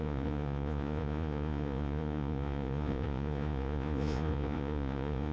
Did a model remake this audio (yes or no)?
yes